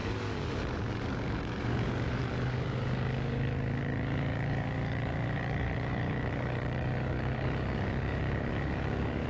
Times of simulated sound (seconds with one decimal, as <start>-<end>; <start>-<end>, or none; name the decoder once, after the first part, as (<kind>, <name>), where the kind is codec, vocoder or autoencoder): 0.0-9.3 (codec, DAC)